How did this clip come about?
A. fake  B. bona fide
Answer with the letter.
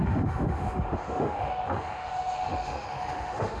A